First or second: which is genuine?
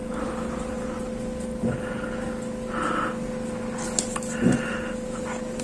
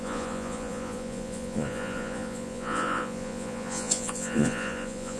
first